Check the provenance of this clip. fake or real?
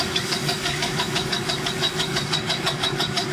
fake